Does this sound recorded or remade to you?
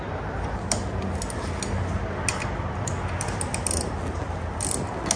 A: recorded